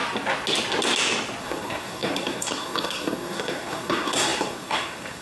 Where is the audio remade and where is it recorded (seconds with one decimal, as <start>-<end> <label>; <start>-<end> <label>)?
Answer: 0.0-1.4 recorded; 1.4-5.2 remade